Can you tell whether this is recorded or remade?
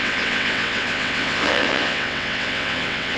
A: remade